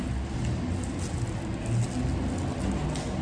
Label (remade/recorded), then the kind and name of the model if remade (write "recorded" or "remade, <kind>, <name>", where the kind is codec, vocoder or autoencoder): recorded